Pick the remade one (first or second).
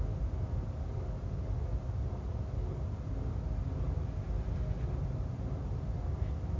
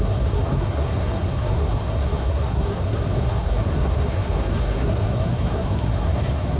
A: second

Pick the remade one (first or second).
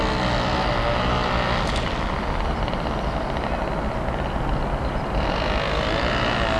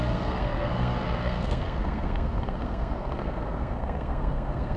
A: second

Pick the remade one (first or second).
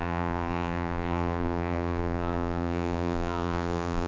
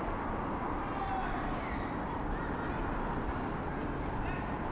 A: first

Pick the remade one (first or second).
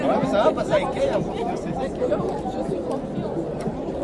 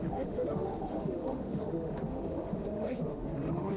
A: second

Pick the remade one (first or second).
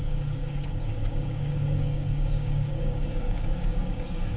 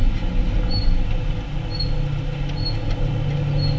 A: first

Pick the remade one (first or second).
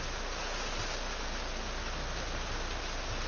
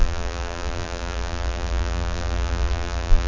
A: second